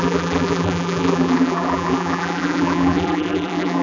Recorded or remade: remade